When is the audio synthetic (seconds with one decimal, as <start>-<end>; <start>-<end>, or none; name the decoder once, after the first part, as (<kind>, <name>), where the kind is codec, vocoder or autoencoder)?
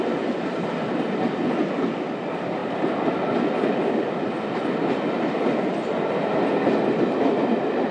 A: none